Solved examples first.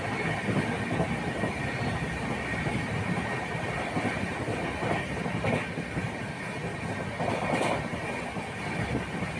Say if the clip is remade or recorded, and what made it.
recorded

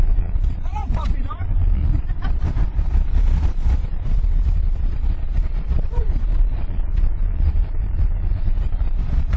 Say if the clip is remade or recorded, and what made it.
remade, vocoder, Vocos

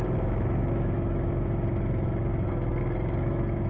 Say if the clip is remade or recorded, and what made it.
remade, autoencoder, DAC-VAE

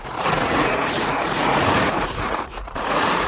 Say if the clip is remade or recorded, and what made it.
remade, vocoder, Vocos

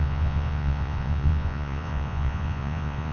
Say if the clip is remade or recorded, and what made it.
remade, vocoder, Vocos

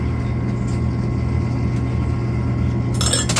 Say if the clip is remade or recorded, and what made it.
recorded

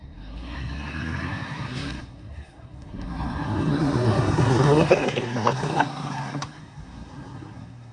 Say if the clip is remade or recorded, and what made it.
remade, codec, SNAC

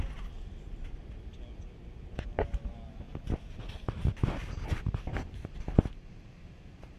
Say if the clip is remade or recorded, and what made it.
recorded